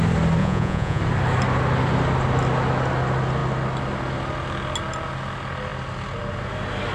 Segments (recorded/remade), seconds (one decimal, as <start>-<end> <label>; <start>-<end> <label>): 0.0-0.4 recorded; 0.4-1.0 remade; 1.0-6.9 recorded